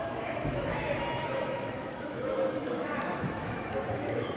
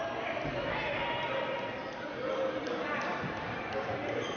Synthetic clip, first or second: first